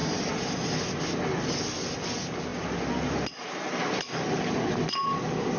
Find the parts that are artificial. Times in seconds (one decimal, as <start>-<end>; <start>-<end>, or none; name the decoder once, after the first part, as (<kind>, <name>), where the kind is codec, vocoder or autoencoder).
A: none